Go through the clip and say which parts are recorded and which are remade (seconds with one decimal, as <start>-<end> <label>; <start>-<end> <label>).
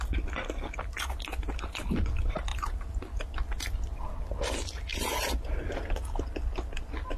0.0-4.9 recorded; 4.9-5.8 remade; 5.8-7.2 recorded